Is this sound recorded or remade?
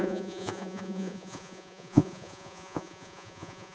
remade